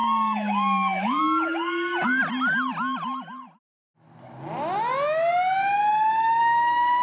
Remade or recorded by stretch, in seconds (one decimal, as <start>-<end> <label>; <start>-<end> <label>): 0.0-2.2 remade; 2.2-6.4 recorded; 6.4-7.0 remade